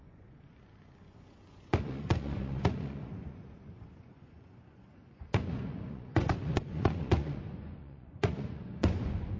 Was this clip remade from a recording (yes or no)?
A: yes